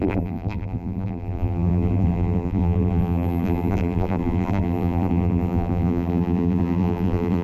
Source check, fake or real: fake